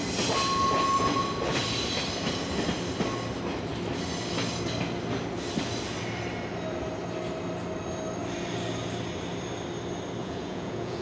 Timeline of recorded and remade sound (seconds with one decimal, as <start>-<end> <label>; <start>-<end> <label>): 0.0-10.2 recorded; 10.2-11.0 remade